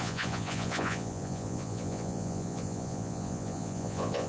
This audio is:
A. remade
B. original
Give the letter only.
A